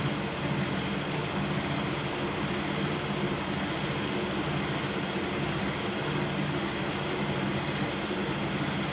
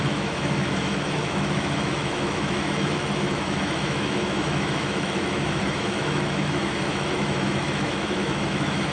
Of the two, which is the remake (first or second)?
second